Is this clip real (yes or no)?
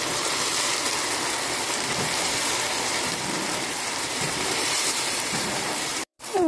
no